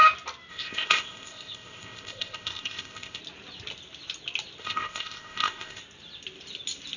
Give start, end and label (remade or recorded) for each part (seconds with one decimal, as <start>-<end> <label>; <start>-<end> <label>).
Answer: 0.0-0.5 recorded; 0.5-3.2 remade; 3.2-4.6 recorded; 4.6-5.8 remade; 5.8-7.0 recorded